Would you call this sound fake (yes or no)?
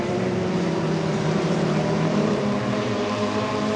yes